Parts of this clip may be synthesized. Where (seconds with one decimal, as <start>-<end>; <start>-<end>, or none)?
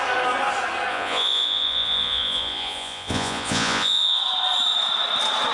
0.9-4.2